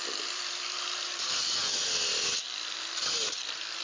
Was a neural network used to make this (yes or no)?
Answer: yes